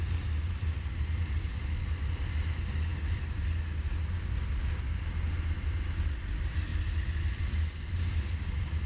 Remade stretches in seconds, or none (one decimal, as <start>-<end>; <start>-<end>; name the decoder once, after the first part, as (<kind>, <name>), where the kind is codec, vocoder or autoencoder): none